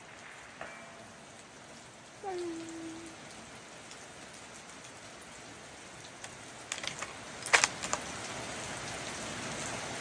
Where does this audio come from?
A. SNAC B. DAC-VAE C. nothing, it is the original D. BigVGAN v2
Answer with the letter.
C